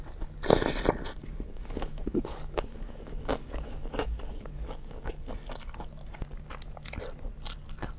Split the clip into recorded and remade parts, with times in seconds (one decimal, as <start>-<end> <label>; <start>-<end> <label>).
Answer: 0.0-1.2 recorded; 1.2-5.3 remade; 5.3-8.0 recorded